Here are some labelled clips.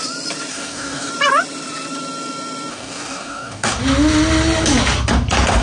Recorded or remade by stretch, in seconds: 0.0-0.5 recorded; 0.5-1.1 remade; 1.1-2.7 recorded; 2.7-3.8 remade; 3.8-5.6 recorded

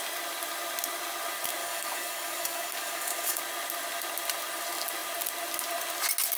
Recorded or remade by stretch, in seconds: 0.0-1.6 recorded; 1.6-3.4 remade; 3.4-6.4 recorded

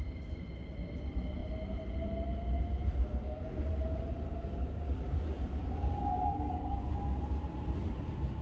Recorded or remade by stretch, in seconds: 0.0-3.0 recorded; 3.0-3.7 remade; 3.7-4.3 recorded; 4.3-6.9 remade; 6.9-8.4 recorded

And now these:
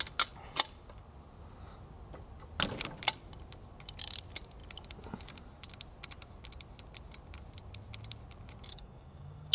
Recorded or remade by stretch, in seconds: 0.0-8.7 recorded; 8.7-9.5 remade